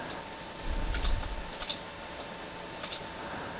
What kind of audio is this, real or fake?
real